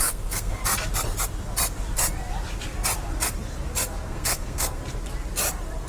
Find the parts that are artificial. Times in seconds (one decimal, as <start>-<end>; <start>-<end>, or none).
0.0-0.6; 4.1-4.8